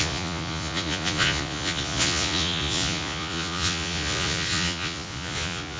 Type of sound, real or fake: fake